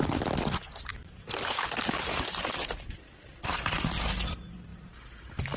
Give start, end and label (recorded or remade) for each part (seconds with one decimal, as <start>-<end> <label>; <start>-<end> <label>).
0.0-5.6 recorded